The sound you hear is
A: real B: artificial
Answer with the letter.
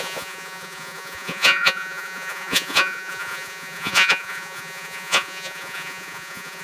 B